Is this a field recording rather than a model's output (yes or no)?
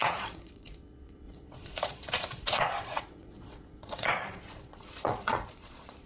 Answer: no